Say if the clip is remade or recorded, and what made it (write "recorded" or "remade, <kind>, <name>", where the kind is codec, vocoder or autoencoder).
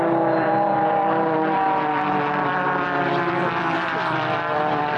remade, vocoder, BigVGAN v2